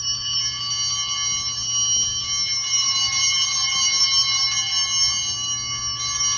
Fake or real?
real